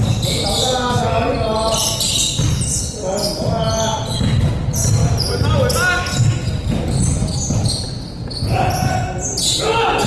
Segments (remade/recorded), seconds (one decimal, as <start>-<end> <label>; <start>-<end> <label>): 0.0-10.1 recorded